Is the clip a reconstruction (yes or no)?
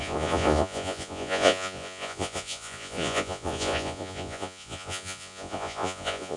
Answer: yes